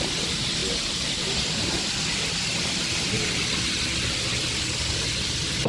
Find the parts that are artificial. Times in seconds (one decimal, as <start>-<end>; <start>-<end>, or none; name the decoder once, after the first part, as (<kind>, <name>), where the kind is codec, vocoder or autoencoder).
none